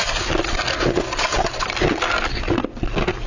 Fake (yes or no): no